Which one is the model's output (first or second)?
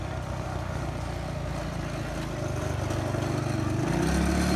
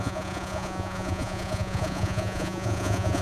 second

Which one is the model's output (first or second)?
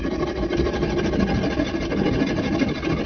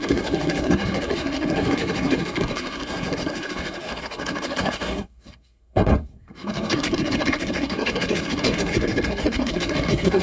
second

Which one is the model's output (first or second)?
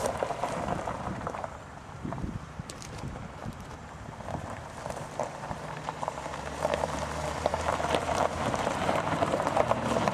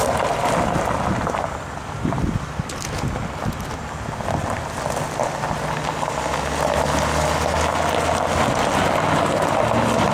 first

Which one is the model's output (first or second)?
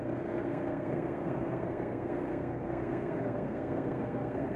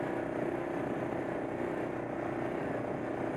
first